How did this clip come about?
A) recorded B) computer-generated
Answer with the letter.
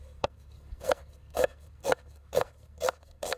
B